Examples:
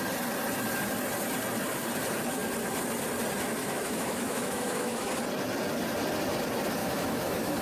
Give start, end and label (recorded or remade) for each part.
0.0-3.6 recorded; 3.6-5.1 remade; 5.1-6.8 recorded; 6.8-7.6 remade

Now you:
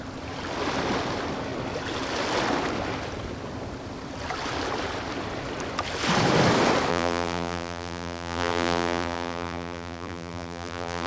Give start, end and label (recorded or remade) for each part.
0.0-6.9 recorded; 6.9-11.1 remade

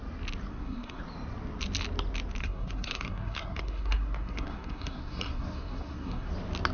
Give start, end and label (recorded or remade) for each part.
0.0-0.5 recorded; 0.5-1.0 remade; 1.0-2.4 recorded; 2.4-6.3 remade; 6.3-6.7 recorded

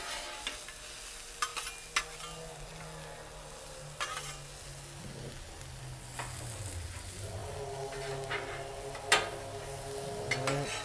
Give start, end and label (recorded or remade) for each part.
0.0-10.8 recorded

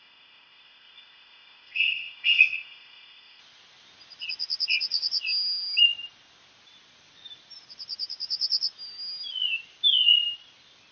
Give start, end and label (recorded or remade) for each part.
0.0-3.4 remade; 3.4-10.9 recorded

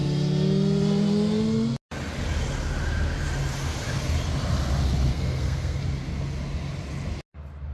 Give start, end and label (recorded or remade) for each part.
0.0-5.1 recorded; 5.1-5.8 remade; 5.8-7.7 recorded

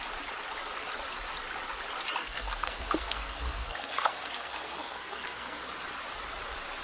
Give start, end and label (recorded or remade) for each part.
0.0-2.2 recorded; 2.2-5.7 remade; 5.7-6.8 recorded

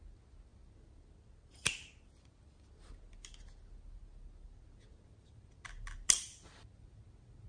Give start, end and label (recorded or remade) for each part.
0.0-7.5 recorded